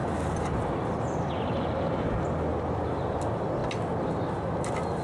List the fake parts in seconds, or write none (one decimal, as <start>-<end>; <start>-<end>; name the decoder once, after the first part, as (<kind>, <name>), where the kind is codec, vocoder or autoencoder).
none